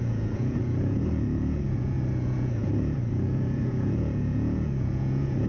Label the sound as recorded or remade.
remade